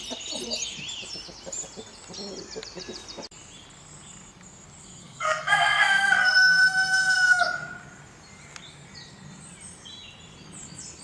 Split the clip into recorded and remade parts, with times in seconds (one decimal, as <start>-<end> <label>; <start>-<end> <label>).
0.0-5.0 recorded; 5.0-7.4 remade; 7.4-11.0 recorded